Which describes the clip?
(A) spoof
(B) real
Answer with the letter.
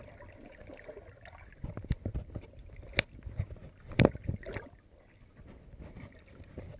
B